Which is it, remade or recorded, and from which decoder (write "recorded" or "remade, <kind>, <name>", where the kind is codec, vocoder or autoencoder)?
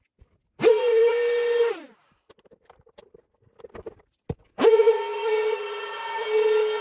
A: recorded